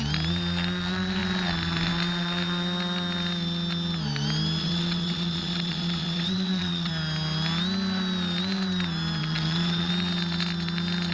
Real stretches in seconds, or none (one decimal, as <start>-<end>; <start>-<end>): 0.0-4.6; 6.9-9.2; 9.9-11.1